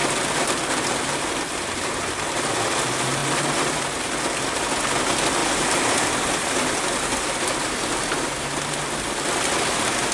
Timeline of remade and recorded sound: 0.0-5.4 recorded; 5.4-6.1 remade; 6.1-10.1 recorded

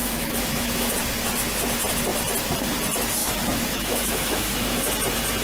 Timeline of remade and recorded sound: 0.0-0.9 remade; 0.9-3.2 recorded; 3.2-4.8 remade; 4.8-5.4 recorded

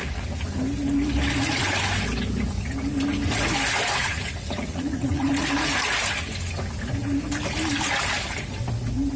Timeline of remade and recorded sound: 0.0-4.0 recorded; 4.0-5.3 remade; 5.3-9.2 recorded

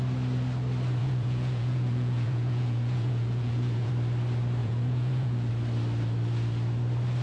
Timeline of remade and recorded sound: 0.0-1.0 recorded; 1.0-3.9 remade; 3.9-4.6 recorded; 4.6-5.5 remade; 5.5-7.2 recorded